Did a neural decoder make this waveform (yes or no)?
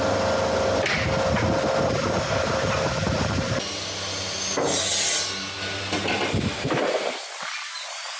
no